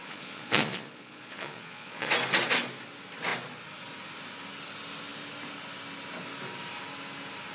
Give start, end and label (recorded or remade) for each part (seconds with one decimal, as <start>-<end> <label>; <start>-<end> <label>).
0.0-2.1 remade; 2.1-7.5 recorded